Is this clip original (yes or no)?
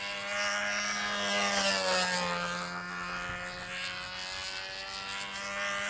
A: yes